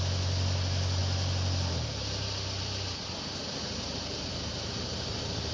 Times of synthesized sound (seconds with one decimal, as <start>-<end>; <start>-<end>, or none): none